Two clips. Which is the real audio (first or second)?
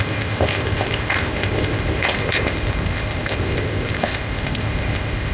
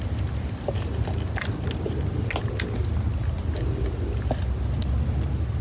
second